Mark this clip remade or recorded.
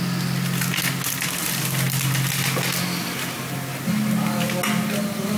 recorded